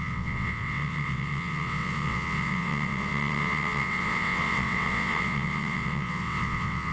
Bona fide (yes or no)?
no